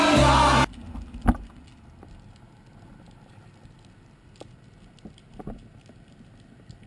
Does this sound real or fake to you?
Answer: real